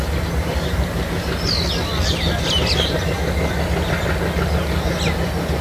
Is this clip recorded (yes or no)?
yes